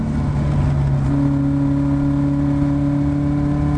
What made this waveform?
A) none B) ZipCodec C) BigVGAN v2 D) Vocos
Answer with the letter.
A